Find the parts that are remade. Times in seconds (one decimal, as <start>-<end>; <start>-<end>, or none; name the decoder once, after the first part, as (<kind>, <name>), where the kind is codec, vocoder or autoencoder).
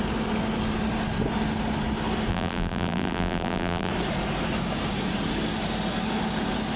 2.3-3.9 (vocoder, BigVGAN v2)